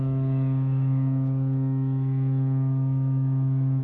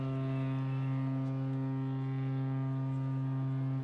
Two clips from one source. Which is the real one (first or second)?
second